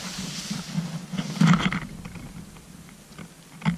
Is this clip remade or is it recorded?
recorded